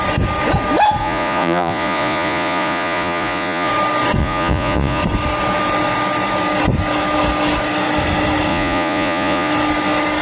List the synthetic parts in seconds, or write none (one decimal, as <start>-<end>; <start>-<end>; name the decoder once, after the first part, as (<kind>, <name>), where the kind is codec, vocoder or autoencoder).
1.0-3.7 (vocoder, Vocos); 4.2-5.0; 8.5-9.5